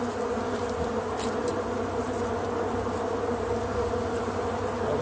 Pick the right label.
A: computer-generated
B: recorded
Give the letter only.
B